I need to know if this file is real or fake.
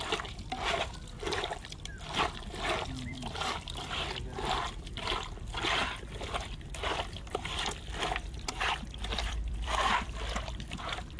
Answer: fake